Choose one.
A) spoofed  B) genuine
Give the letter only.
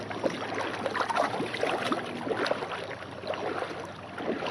B